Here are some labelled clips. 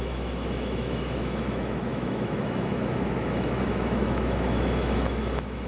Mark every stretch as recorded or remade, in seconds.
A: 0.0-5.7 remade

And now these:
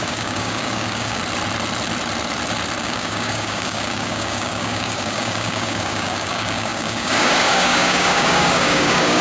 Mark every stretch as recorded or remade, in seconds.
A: 0.0-1.2 remade; 1.2-2.8 recorded; 2.8-9.2 remade